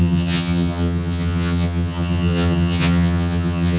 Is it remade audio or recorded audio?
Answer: remade